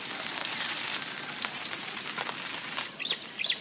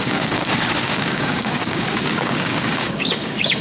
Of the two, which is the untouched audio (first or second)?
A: first